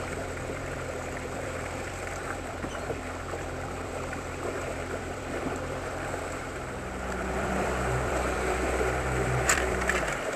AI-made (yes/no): yes